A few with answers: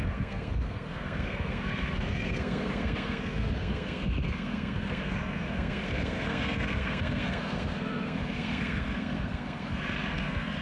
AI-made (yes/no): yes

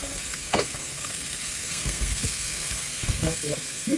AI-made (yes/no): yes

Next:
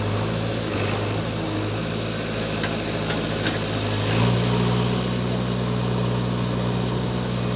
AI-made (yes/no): no